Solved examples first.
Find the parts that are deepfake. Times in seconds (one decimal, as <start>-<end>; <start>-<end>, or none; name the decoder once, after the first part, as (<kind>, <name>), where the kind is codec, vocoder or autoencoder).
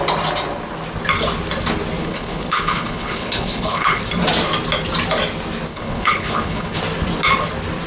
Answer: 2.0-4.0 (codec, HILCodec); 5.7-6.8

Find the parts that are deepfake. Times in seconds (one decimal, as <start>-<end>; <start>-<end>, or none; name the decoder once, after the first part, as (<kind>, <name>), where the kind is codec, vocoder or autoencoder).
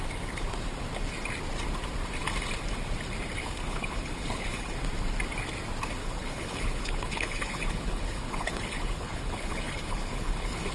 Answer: 3.4-4.7 (codec, HILCodec); 6.0-10.7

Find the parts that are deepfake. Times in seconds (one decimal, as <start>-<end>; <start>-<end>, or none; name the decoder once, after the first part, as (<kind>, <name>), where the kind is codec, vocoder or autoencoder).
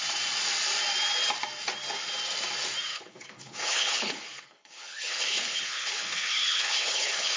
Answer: 2.9-7.4 (codec, HILCodec)